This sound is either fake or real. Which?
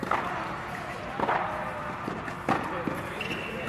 real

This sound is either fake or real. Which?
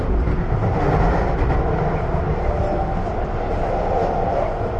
real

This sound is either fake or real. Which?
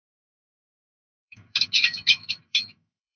fake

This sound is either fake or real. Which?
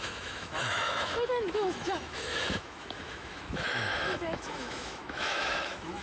fake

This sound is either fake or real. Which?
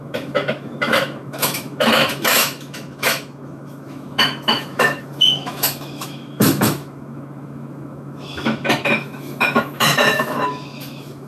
fake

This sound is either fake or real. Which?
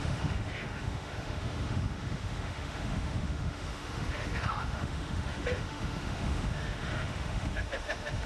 fake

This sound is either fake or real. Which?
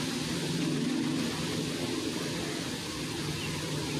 real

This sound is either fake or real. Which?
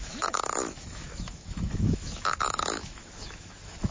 fake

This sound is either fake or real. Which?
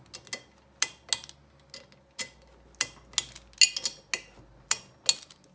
real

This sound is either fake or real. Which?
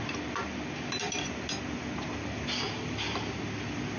real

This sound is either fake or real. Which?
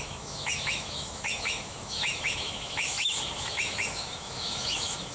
fake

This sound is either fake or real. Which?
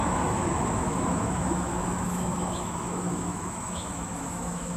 fake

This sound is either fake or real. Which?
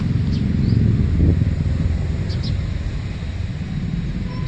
real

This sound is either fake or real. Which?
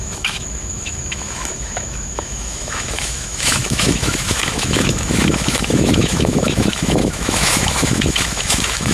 fake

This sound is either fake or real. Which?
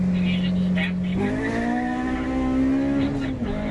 real